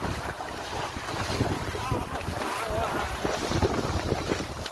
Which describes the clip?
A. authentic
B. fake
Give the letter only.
A